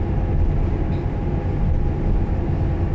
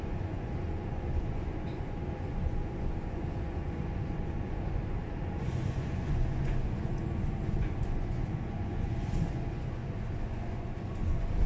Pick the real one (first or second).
first